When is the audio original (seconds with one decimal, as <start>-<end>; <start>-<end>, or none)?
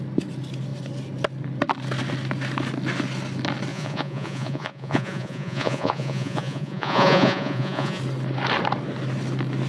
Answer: 0.0-3.7; 8.0-9.7